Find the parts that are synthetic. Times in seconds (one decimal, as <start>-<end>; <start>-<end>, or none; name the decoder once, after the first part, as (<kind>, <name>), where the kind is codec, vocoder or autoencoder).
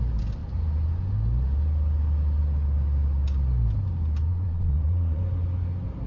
4.3-5.2 (vocoder, Vocos)